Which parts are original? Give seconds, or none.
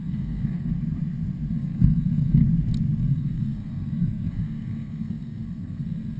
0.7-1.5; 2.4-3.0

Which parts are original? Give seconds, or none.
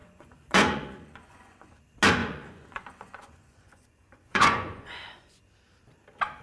1.8-2.2; 5.4-6.4